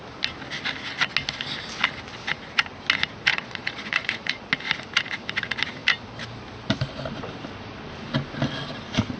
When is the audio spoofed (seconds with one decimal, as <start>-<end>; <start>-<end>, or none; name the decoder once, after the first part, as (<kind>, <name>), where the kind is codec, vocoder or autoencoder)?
3.3-4.4 (vocoder, Vocos)